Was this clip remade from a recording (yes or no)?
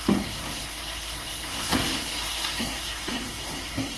yes